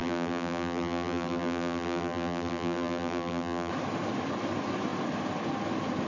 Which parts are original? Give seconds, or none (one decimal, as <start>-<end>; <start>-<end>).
3.7-6.1